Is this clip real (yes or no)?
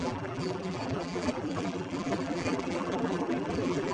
no